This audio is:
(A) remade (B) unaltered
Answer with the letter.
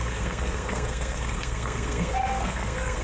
A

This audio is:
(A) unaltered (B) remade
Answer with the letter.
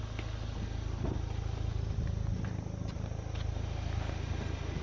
A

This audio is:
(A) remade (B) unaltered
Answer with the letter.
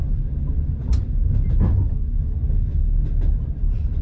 B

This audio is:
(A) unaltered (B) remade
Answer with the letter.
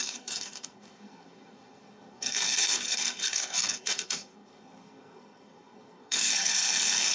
B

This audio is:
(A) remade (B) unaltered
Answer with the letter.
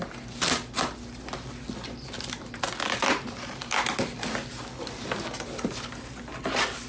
B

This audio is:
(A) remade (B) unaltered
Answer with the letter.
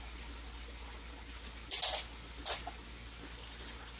B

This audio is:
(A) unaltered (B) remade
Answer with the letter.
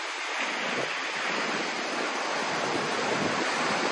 A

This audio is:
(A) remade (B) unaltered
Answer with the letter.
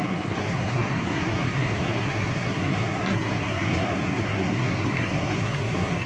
A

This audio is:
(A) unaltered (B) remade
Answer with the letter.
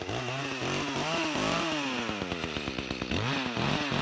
A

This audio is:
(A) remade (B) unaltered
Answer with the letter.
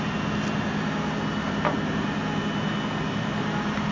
B